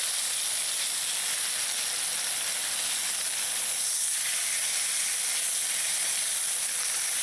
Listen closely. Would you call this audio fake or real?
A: real